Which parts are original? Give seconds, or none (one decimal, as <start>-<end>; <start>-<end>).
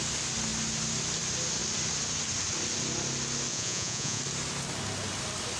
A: 0.0-3.5; 4.2-5.6